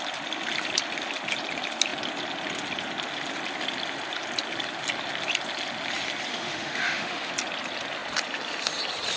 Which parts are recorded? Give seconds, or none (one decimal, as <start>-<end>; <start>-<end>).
0.0-6.3; 7.3-9.2